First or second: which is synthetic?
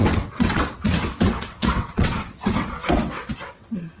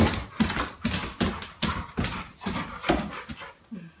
first